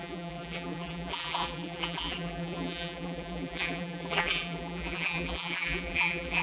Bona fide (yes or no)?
no